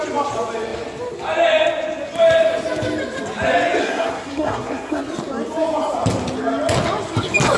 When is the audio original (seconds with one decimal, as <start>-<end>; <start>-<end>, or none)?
0.0-3.8; 5.0-7.6